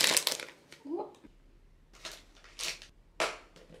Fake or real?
real